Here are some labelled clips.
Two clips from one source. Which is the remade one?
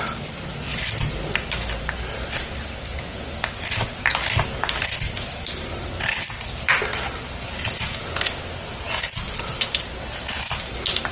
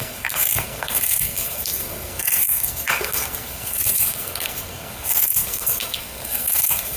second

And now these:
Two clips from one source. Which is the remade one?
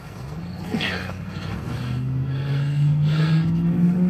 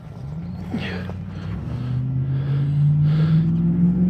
first